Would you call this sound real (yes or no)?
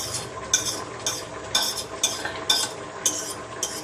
yes